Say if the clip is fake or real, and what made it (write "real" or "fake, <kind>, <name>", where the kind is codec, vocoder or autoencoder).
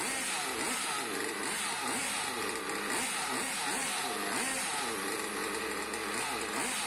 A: real